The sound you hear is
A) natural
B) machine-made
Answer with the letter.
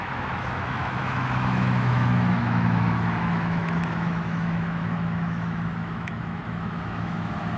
B